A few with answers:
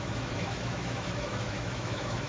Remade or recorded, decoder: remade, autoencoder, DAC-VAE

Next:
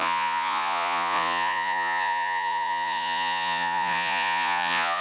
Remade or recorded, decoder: remade, vocoder, Vocos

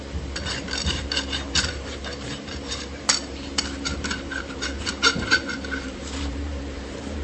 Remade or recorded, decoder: remade, vocoder, BigVGAN v2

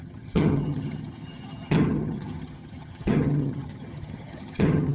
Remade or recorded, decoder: remade, vocoder, HiFi-GAN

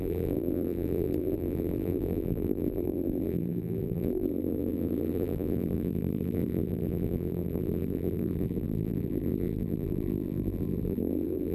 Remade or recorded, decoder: remade, vocoder, BigVGAN v2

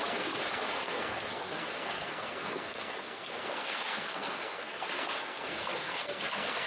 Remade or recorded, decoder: remade, codec, SNAC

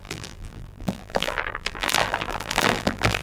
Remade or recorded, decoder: remade, vocoder, BigVGAN v2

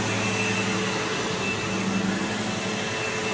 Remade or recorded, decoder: recorded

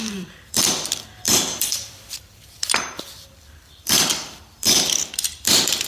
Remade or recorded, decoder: remade, vocoder, BigVGAN v2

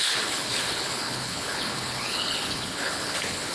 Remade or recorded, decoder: remade, codec, HILCodec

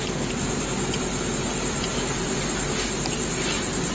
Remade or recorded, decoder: recorded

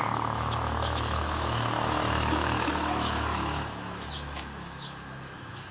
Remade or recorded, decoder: remade, autoencoder, DAC-VAE